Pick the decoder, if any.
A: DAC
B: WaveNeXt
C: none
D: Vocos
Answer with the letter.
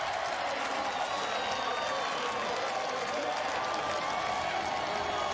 C